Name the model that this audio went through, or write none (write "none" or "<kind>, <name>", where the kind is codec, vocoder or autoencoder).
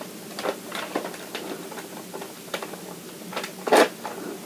none